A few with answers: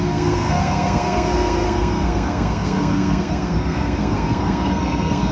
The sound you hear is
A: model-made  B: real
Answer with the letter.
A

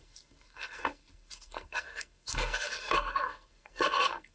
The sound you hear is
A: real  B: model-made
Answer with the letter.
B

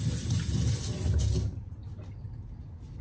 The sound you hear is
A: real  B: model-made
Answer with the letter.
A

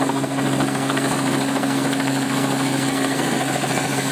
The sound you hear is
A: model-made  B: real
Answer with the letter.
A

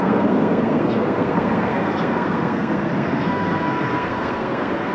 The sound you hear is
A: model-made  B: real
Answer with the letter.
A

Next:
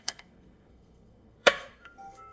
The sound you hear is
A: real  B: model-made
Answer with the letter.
B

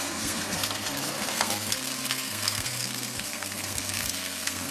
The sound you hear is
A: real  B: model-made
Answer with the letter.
B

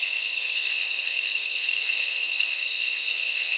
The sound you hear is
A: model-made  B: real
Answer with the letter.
A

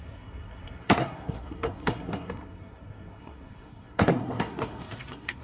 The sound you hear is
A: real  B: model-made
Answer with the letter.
B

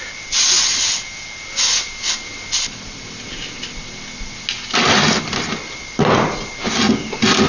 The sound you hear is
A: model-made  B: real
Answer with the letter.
B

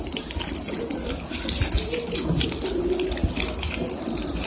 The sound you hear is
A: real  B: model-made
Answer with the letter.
A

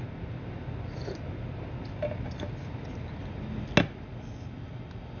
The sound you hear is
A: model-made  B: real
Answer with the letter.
B